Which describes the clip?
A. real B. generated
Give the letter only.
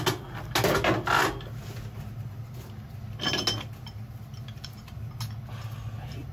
A